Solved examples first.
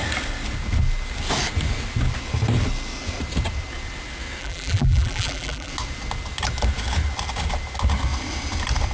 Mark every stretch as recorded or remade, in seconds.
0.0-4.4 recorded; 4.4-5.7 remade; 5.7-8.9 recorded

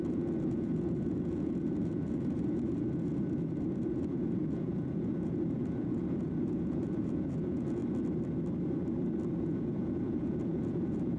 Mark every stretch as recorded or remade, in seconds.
0.0-7.8 remade; 7.8-9.4 recorded; 9.4-11.2 remade

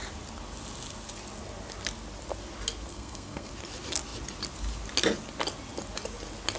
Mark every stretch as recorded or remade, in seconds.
0.0-2.9 recorded; 2.9-3.5 remade; 3.5-6.6 recorded

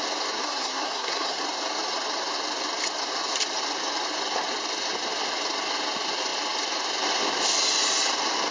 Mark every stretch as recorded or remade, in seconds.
0.0-0.4 recorded; 0.4-1.4 remade; 1.4-8.5 recorded